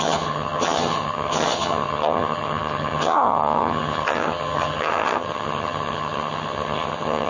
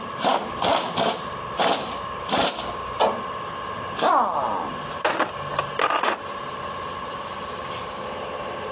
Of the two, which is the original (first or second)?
second